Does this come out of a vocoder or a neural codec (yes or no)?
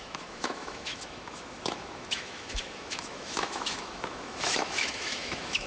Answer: yes